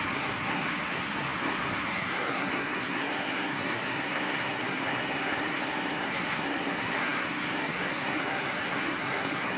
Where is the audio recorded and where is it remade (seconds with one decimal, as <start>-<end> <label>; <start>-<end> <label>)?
0.0-9.6 remade